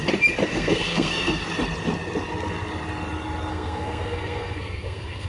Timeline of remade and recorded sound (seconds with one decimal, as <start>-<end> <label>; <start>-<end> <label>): 0.0-0.5 recorded; 0.5-1.4 remade; 1.4-3.5 recorded; 3.5-5.3 remade

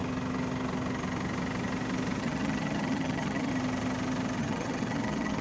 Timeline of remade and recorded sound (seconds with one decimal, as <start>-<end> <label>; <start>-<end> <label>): 0.0-2.2 recorded; 2.2-3.5 remade; 3.5-4.4 recorded; 4.4-5.4 remade

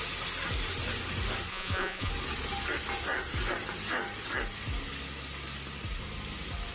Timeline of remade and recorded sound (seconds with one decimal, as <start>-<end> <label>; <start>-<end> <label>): 0.0-1.5 recorded; 1.5-2.1 remade; 2.1-6.7 recorded

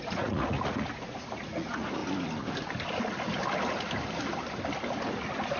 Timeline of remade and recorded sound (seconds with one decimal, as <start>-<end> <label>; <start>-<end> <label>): 0.0-2.0 remade; 2.0-5.6 recorded

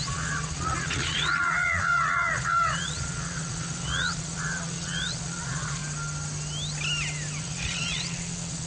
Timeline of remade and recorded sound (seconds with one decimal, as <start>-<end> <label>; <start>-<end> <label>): 0.0-5.8 remade; 5.8-7.4 recorded; 7.4-8.7 remade

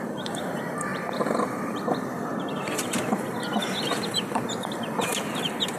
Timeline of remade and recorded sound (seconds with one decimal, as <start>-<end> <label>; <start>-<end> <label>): 0.0-5.1 remade; 5.1-5.8 recorded